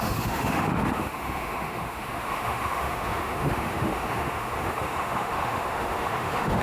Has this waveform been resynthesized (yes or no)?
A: yes